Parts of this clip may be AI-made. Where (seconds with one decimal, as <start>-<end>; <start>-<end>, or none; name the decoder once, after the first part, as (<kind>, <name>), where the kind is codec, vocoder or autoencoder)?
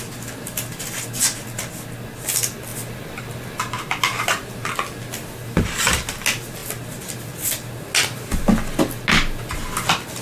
none